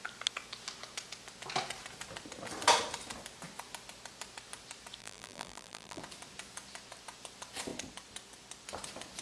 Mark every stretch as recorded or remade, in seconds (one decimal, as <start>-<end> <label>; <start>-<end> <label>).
0.0-5.0 recorded; 5.0-6.0 remade; 6.0-9.2 recorded